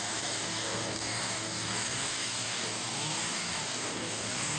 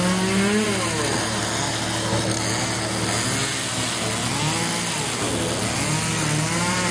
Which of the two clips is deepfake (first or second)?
first